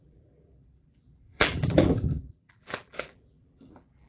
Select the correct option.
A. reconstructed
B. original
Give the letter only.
A